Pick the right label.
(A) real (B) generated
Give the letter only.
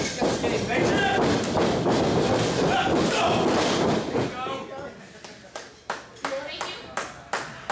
A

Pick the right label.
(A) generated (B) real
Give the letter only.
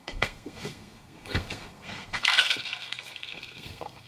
A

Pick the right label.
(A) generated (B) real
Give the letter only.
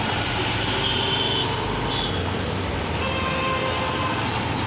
B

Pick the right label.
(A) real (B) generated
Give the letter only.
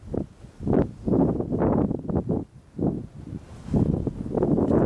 A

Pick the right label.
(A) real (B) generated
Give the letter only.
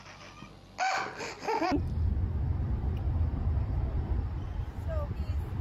A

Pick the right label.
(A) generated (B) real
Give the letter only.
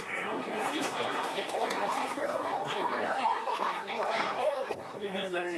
A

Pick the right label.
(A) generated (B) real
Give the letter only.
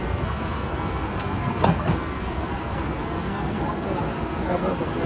A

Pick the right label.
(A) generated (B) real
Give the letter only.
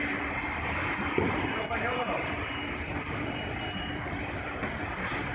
A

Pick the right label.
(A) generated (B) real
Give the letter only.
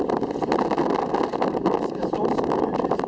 B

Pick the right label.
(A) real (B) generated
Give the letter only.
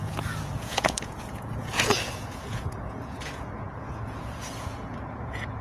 B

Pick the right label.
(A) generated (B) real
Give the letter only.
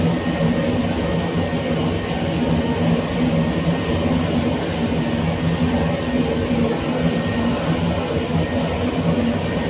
B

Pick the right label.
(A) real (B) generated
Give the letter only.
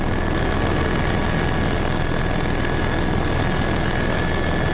A